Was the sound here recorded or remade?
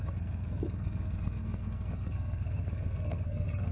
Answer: remade